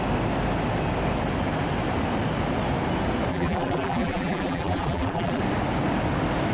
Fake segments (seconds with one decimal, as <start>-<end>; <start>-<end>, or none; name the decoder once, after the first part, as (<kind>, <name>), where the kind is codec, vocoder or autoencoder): 3.3-5.4 (vocoder, BigVGAN v2)